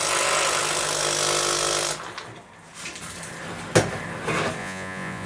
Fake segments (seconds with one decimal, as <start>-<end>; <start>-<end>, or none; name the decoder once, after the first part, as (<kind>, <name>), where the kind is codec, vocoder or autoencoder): 4.6-5.3 (vocoder, Vocos)